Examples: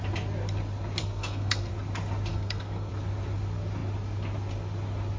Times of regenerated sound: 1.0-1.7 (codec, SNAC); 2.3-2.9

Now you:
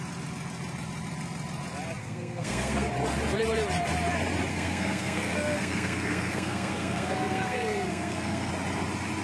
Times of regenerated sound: 2.0-2.9 (codec, SNAC); 4.5-8.5

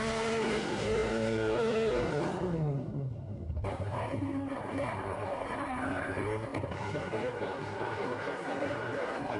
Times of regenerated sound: 0.0-9.4 (codec, SNAC)

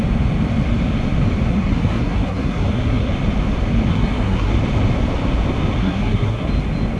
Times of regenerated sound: 1.5-3.1 (codec, SNAC); 3.9-4.5; 5.8-6.5

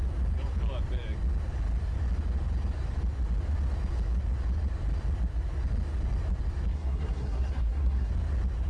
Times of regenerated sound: 6.7-8.1 (codec, SNAC)

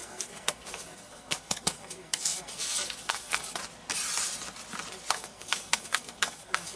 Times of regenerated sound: 0.0-3.6 (codec, SNAC); 5.1-6.8